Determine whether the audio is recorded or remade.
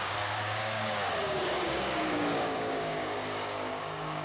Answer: remade